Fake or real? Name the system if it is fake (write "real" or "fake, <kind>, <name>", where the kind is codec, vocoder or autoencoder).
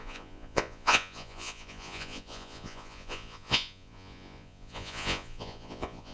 fake, vocoder, Vocos